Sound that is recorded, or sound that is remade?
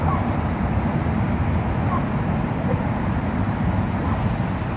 recorded